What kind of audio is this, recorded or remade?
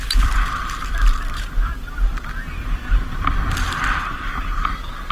remade